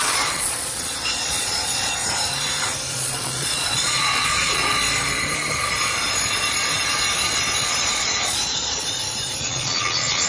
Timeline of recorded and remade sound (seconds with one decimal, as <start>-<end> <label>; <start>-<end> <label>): 0.0-2.0 remade; 2.0-2.9 recorded; 2.9-4.6 remade; 4.6-7.8 recorded; 7.8-8.8 remade; 8.8-9.4 recorded; 9.4-10.3 remade